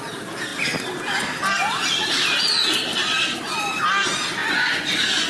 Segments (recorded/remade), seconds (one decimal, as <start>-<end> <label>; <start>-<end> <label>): 0.0-4.4 recorded; 4.4-5.3 remade